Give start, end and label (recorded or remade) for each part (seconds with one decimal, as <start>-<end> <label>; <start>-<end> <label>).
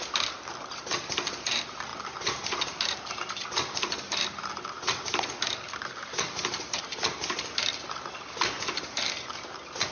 0.0-9.9 recorded